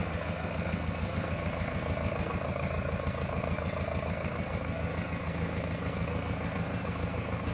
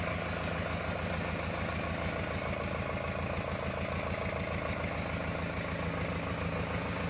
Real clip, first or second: second